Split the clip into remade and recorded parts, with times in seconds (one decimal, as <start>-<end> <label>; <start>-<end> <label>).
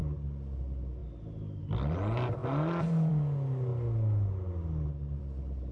0.0-5.7 recorded